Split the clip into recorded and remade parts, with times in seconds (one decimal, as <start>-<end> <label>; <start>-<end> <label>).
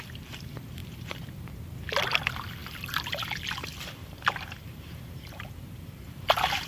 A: 0.0-0.8 recorded; 0.8-1.5 remade; 1.5-2.6 recorded; 2.6-3.3 remade; 3.3-4.0 recorded; 4.0-6.7 remade